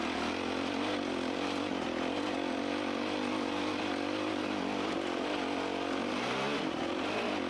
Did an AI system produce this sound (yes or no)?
no